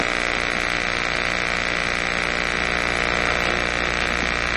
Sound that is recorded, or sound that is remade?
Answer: recorded